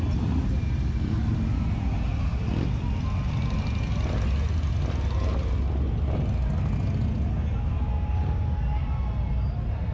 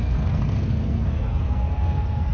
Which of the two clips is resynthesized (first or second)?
second